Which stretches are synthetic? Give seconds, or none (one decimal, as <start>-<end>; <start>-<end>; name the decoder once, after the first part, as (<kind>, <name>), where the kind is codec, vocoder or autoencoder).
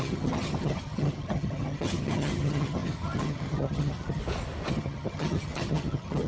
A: 0.0-4.2 (vocoder, HiFi-GAN); 4.7-6.3